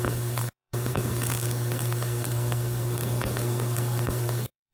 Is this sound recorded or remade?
remade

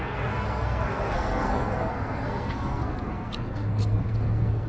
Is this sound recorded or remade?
remade